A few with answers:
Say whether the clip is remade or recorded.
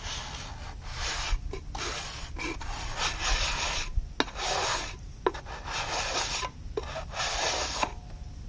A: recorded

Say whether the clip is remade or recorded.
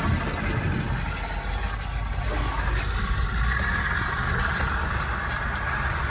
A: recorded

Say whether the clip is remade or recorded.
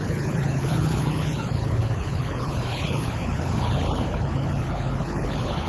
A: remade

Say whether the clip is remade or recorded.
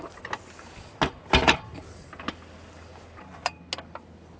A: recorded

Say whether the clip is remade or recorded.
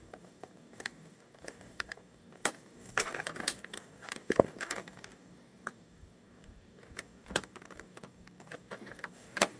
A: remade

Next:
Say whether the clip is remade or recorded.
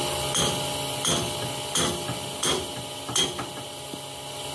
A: recorded